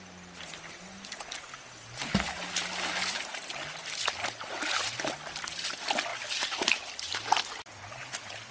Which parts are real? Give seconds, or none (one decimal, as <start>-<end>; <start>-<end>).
0.0-8.5

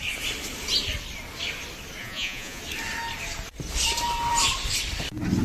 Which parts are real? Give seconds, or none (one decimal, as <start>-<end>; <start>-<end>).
0.0-2.0; 2.6-5.4

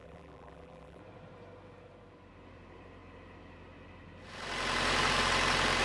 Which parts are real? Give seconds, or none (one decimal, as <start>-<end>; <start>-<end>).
1.0-5.8

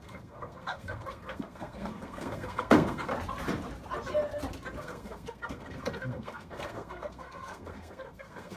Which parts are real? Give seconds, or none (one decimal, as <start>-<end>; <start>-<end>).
3.1-4.8

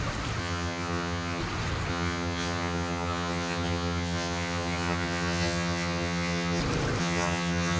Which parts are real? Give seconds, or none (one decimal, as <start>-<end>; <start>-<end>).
0.0-0.4; 1.4-1.9; 6.6-7.0

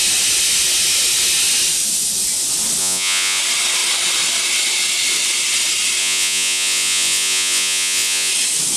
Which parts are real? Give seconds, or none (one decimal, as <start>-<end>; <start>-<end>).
0.0-2.8; 3.4-6.0; 8.3-8.8

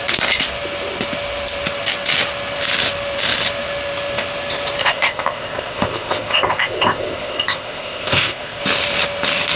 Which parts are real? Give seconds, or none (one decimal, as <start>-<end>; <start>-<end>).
0.0-4.8; 8.6-9.6